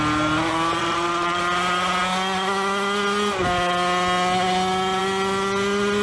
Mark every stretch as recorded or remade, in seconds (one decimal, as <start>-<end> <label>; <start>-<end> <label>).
0.0-0.8 recorded; 0.8-1.4 remade; 1.4-6.0 recorded